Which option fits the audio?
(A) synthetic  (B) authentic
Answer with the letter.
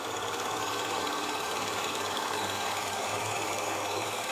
A